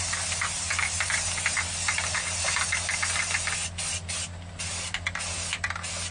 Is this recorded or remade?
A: recorded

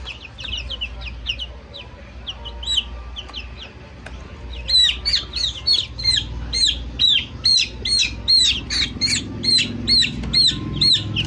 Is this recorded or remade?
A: recorded